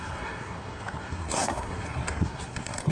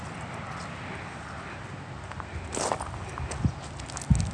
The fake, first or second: first